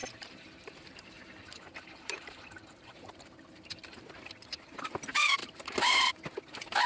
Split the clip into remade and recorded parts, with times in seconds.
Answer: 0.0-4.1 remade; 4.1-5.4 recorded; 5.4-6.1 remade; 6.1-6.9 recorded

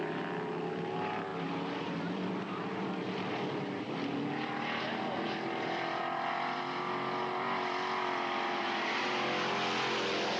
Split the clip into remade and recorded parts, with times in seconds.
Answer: 0.0-1.3 recorded; 1.3-6.0 remade; 6.0-10.4 recorded

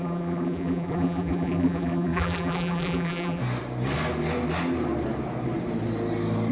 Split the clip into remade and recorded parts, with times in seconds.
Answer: 0.0-3.4 remade; 3.4-6.5 recorded